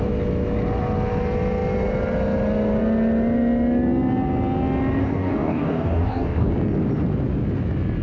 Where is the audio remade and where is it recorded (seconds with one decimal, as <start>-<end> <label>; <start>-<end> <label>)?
0.0-5.0 recorded; 5.0-6.5 remade; 6.5-8.0 recorded